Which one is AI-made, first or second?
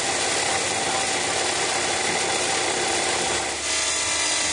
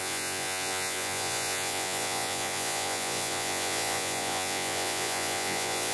second